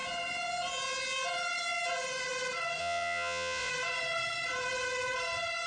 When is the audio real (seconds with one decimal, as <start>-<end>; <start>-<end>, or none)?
0.0-2.8; 3.7-5.7